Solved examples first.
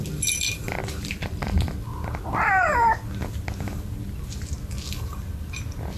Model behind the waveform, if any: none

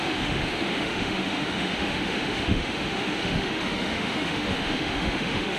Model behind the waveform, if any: autoencoder, DAC-VAE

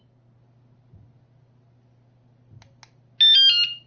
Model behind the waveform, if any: none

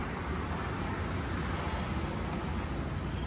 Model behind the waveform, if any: none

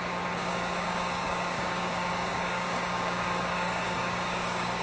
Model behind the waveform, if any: codec, DAC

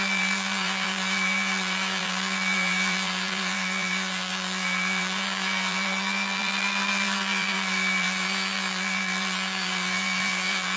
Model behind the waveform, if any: vocoder, BigVGAN v2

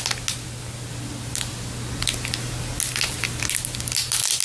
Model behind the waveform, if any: none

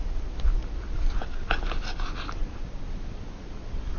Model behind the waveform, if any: none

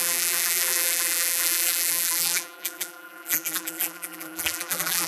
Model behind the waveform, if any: vocoder, BigVGAN v2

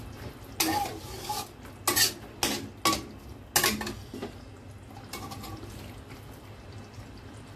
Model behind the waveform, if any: none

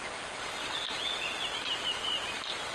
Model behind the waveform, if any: none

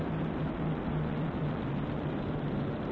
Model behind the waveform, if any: vocoder, BigVGAN v2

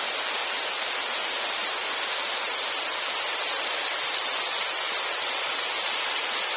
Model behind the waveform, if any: none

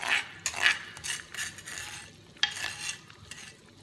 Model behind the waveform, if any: none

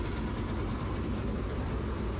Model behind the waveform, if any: vocoder, BigVGAN v2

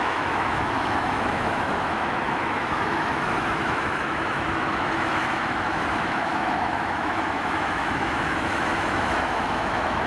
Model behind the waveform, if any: autoencoder, DAC-VAE